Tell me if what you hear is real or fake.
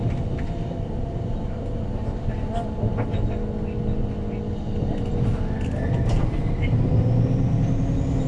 real